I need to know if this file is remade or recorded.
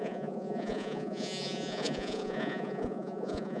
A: remade